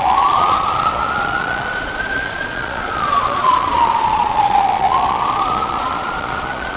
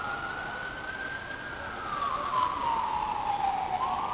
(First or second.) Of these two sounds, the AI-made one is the first